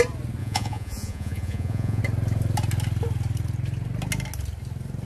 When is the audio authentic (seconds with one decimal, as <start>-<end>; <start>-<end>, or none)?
0.0-0.4; 2.0-5.1